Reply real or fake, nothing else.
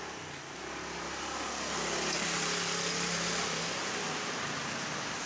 real